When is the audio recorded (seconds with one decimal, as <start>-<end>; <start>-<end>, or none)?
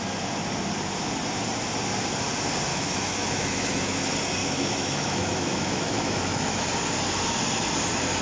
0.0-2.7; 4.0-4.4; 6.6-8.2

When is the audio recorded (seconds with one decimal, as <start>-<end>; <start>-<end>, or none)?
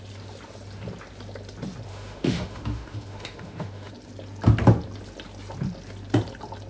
0.0-1.9; 3.9-6.7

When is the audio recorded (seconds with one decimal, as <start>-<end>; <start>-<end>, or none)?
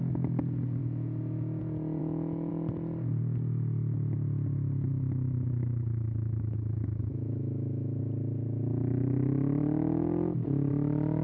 0.0-0.8; 1.6-2.0; 2.5-4.9; 8.0-11.2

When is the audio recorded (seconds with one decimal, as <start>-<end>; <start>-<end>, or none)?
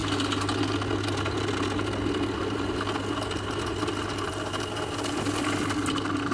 0.0-6.3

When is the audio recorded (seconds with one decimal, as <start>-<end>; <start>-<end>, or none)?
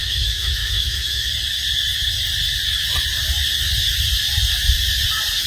1.3-5.5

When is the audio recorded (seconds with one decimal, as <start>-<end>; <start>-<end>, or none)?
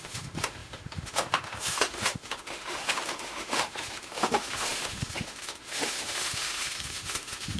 none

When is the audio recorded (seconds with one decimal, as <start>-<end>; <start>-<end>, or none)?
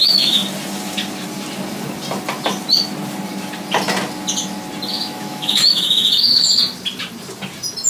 0.4-4.9; 6.6-7.9